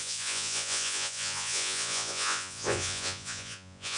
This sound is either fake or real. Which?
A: fake